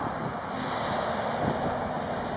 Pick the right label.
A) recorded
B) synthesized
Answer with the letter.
A